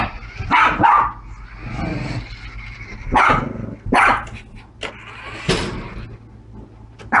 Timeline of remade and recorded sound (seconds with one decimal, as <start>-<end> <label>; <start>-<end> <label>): 0.0-7.2 recorded